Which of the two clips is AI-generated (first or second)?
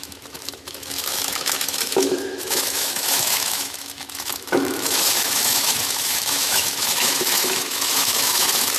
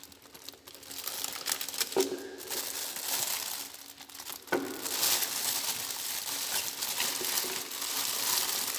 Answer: first